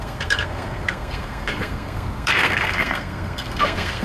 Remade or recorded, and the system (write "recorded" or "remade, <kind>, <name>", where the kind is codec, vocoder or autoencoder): remade, codec, SNAC